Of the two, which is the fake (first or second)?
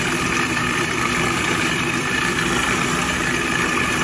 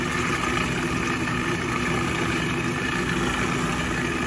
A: first